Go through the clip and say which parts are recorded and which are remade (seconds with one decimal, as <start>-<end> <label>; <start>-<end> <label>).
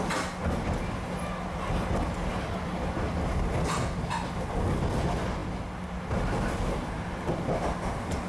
0.0-8.3 recorded